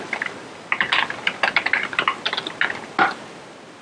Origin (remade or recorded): recorded